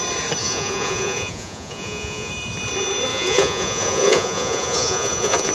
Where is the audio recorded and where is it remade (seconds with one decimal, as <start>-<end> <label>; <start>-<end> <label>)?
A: 0.0-0.4 recorded; 0.4-2.3 remade; 2.3-3.1 recorded; 3.1-5.5 remade